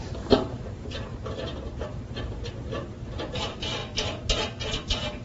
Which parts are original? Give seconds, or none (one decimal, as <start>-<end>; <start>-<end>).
3.8-4.7